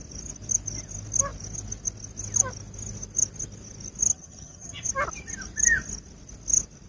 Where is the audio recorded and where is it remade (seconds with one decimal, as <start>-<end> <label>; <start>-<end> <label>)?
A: 0.0-4.1 recorded; 4.1-4.9 remade; 4.9-6.9 recorded